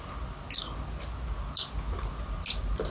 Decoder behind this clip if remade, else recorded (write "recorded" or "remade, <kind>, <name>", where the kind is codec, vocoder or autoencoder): recorded